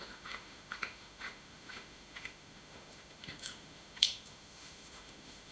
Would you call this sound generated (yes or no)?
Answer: yes